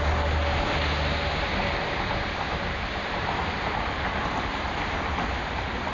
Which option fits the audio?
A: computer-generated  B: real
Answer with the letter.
B